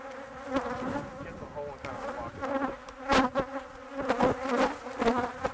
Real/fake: real